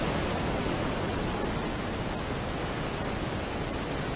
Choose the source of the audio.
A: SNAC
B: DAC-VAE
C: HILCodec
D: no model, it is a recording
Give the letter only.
D